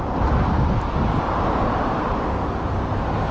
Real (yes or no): yes